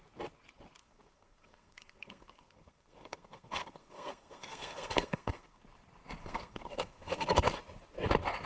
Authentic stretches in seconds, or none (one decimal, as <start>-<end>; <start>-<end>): 0.0-0.8; 5.6-6.2; 7.5-8.5